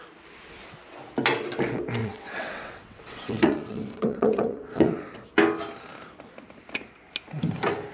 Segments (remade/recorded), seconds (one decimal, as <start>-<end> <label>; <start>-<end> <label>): 0.0-2.0 recorded; 2.0-5.0 remade; 5.0-7.9 recorded